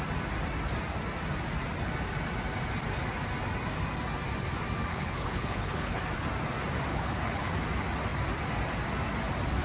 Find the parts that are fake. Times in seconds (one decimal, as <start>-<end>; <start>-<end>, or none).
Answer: 4.9-6.0; 6.9-7.5